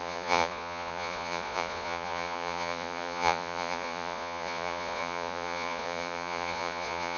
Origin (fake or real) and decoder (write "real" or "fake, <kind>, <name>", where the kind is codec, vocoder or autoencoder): fake, vocoder, Vocos